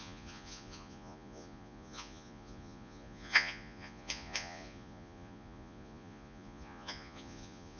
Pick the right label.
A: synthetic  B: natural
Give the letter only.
A